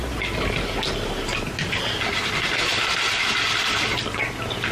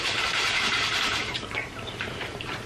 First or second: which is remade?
second